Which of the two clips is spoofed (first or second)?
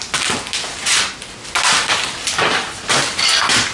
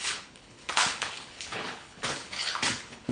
second